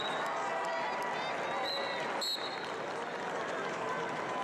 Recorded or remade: recorded